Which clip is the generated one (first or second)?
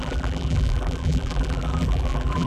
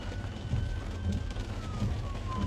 first